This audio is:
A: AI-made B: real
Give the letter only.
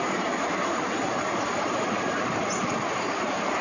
A